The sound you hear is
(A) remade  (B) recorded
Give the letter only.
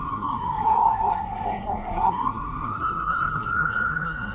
A